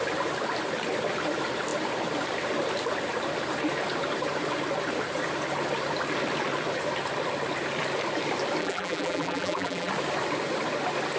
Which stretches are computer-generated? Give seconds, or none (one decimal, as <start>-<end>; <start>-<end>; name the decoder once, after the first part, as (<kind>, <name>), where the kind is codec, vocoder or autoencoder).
8.6-9.9 (vocoder, BigVGAN v2)